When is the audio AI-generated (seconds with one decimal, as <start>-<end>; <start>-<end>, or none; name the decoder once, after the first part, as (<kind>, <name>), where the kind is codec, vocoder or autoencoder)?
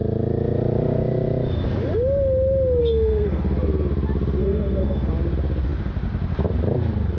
2.8-3.4 (codec, SNAC); 4.4-5.1